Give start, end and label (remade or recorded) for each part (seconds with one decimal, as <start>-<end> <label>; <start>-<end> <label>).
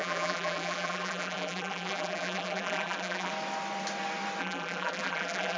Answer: 0.0-3.3 remade; 3.3-4.4 recorded; 4.4-5.6 remade